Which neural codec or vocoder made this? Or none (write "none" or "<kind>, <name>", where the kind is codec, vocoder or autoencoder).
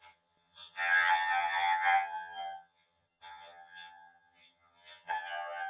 vocoder, HiFi-GAN